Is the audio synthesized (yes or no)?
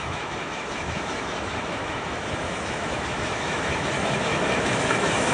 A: yes